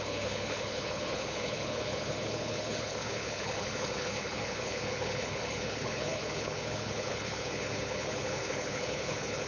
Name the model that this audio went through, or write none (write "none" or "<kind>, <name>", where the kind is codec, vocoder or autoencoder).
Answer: codec, HILCodec